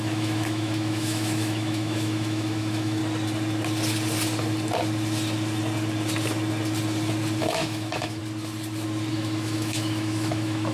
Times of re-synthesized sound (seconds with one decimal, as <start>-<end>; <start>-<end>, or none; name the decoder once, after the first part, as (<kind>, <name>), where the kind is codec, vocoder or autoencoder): 0.0-3.0 (autoencoder, DAC-VAE); 7.4-8.2; 9.1-10.7